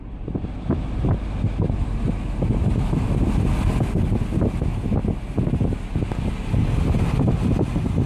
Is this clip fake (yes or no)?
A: no